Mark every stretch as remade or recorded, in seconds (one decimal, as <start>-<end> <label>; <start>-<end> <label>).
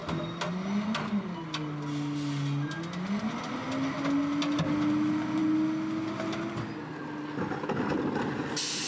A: 0.0-8.9 recorded